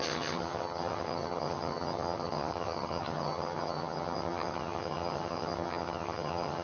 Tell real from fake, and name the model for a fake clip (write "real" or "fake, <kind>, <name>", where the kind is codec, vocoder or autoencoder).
fake, vocoder, HiFi-GAN